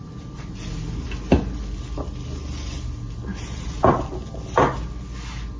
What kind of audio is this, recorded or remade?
recorded